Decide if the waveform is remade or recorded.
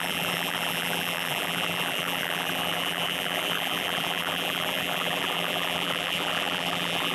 remade